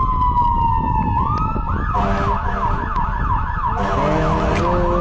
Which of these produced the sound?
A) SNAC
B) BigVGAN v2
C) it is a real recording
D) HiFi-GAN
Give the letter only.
C